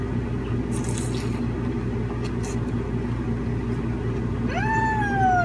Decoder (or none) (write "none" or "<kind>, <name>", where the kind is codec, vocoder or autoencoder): none